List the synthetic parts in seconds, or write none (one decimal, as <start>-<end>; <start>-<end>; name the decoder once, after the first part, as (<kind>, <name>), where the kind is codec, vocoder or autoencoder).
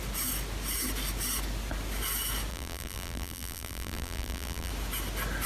2.5-4.7 (vocoder, BigVGAN v2)